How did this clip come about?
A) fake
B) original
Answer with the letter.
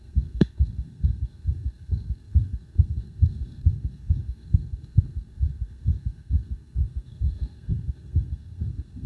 A